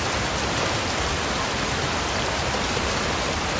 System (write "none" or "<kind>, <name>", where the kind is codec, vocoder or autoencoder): none